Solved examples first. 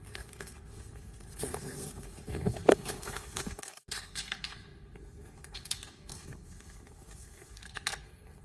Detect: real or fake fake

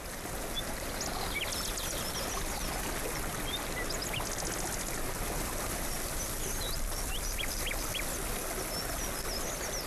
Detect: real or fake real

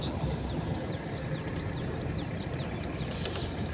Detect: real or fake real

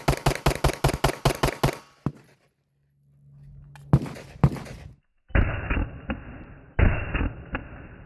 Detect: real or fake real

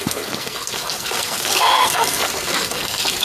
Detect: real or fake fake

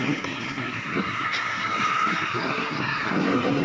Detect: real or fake fake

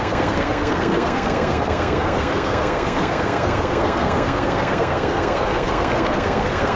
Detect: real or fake fake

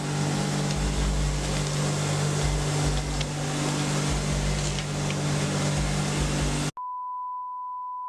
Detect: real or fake real